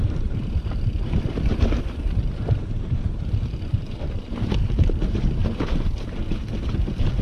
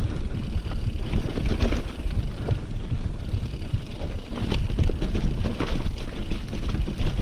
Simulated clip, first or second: first